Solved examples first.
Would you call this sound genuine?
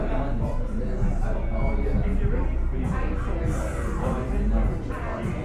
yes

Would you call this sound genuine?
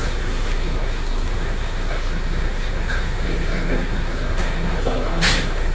no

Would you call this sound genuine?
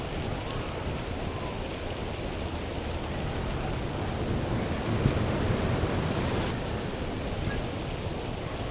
yes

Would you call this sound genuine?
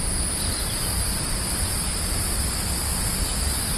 yes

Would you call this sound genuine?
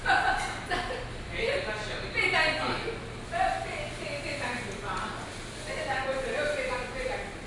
yes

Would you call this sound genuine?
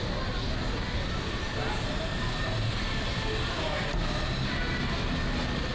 yes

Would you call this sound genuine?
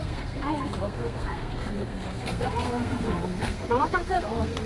no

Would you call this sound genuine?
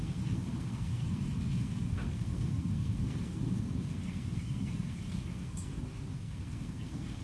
no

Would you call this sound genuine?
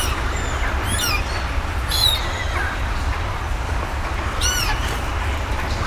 yes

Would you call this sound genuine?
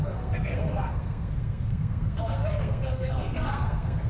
no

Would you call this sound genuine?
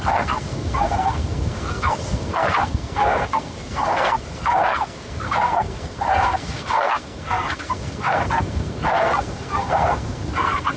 no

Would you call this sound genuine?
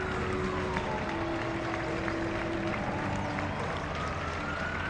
yes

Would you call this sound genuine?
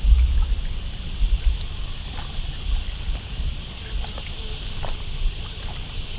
yes